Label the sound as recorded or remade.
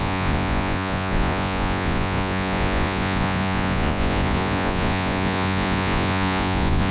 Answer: remade